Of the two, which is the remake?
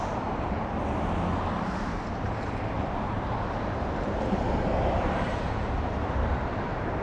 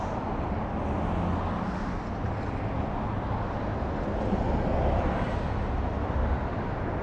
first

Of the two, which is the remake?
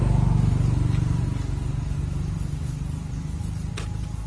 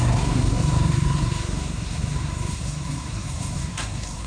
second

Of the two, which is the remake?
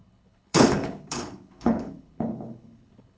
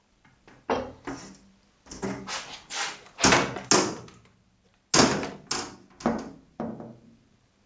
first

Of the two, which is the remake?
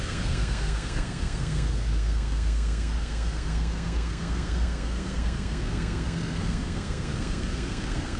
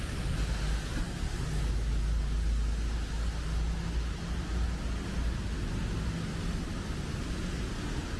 first